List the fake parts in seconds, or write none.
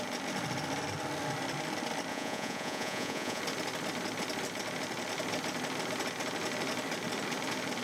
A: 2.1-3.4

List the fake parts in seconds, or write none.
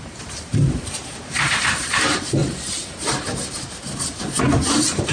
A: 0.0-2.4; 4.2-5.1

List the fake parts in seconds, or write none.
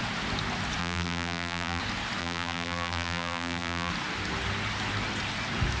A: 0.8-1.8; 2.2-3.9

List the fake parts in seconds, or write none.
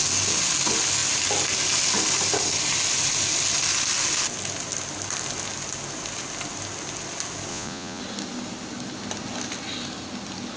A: 7.5-8.0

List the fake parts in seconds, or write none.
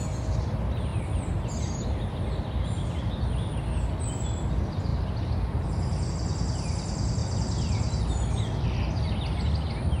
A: none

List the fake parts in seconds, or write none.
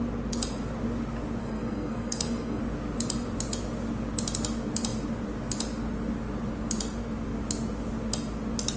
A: 1.4-2.6